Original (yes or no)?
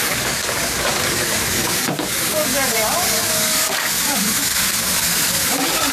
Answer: no